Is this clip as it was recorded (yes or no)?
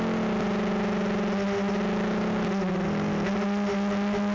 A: yes